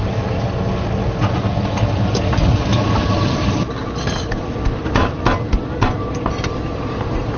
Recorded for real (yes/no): yes